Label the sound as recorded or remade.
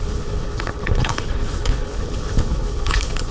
remade